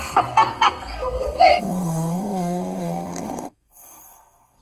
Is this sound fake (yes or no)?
yes